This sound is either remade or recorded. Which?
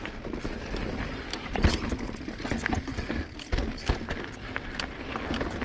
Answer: recorded